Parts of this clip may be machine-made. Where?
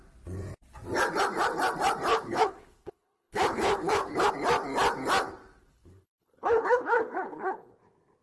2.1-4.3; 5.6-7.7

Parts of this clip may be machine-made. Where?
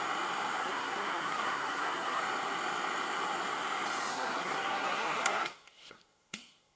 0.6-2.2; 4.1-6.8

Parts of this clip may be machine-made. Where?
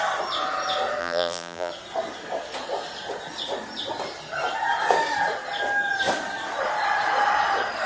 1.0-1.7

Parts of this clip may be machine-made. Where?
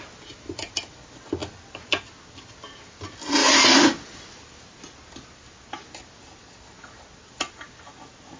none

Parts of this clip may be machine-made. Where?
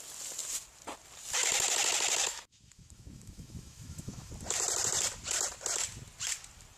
2.2-4.3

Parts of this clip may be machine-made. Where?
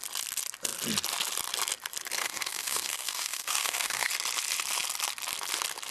2.2-4.1